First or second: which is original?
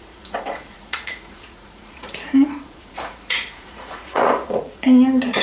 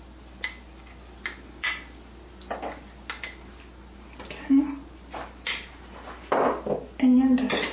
second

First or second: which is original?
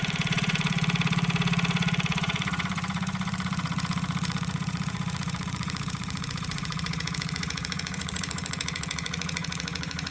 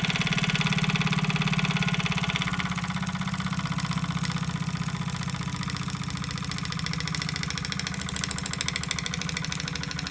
second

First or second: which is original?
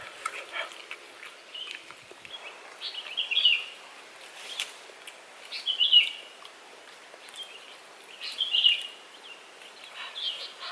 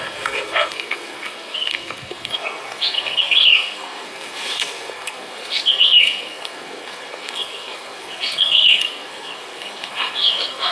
first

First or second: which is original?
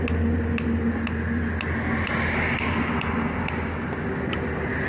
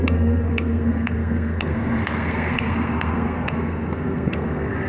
first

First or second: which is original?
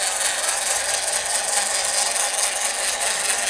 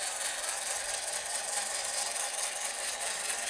first